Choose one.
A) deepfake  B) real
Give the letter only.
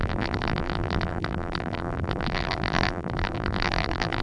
A